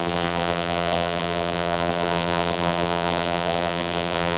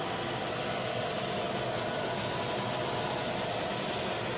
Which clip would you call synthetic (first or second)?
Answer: first